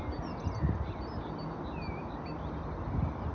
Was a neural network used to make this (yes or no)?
no